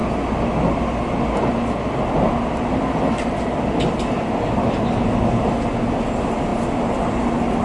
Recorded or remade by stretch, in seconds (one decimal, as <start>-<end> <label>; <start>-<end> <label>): 0.0-7.6 recorded